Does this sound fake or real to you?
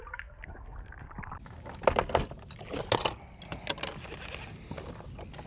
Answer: real